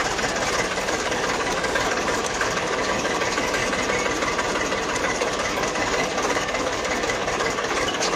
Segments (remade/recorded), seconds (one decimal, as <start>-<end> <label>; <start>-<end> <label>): 0.0-0.8 recorded; 0.8-3.6 remade; 3.6-5.0 recorded; 5.0-8.2 remade